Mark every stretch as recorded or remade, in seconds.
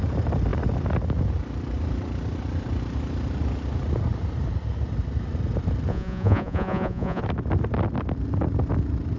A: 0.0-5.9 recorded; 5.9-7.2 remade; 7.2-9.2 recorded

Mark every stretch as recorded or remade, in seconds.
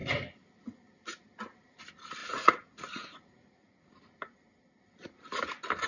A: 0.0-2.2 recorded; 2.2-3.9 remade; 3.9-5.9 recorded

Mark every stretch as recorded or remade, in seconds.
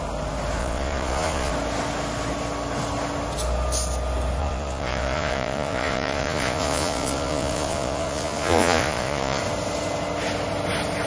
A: 0.0-0.6 recorded; 0.6-1.5 remade; 1.5-4.4 recorded; 4.4-9.4 remade; 9.4-11.1 recorded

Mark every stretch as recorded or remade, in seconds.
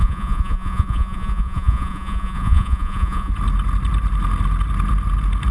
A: 0.0-3.3 remade; 3.3-5.5 recorded